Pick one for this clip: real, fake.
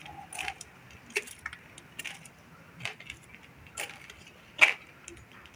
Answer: real